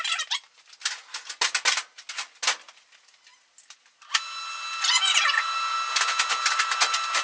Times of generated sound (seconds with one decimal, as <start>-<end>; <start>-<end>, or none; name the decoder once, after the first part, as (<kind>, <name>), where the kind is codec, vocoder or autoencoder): none